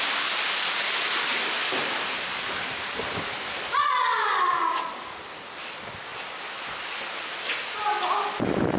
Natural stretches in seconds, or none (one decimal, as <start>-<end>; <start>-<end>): 0.0-8.8